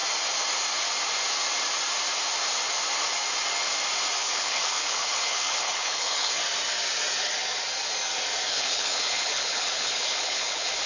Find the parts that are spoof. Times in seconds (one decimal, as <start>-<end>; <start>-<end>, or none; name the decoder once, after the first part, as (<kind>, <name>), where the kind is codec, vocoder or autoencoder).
4.2-6.4 (codec, HILCodec); 8.5-10.9